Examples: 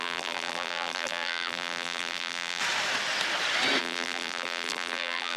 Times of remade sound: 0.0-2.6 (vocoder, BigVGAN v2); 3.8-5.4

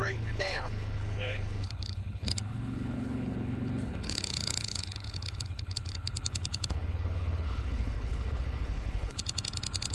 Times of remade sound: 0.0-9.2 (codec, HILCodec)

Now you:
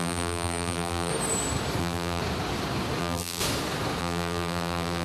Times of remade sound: 0.0-1.1 (vocoder, BigVGAN v2); 1.8-2.2; 3.0-3.4; 4.0-5.0

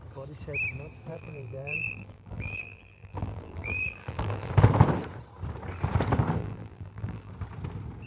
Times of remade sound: 1.1-4.5 (vocoder, BigVGAN v2); 6.4-7.3

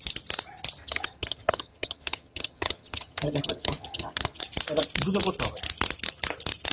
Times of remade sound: 0.8-4.4 (vocoder, HiFi-GAN)

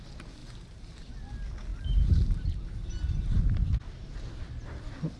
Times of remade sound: 0.4-1.1 (vocoder, BigVGAN v2); 1.7-3.4; 4.0-4.5

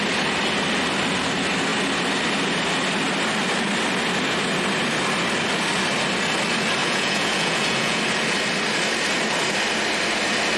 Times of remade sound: 6.8-8.0 (vocoder, Vocos)